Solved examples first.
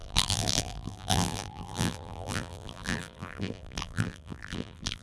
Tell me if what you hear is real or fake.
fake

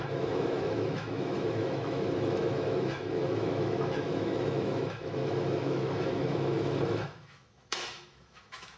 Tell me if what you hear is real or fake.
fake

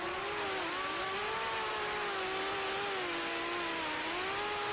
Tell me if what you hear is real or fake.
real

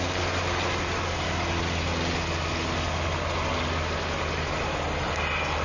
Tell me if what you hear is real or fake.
real